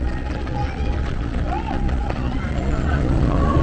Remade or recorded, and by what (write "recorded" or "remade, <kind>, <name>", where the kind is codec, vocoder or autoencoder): remade, vocoder, Vocos